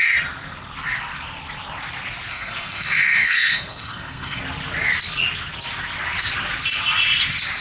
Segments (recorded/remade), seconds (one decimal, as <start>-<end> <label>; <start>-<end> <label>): 0.0-2.3 recorded; 2.3-4.4 remade; 4.4-7.6 recorded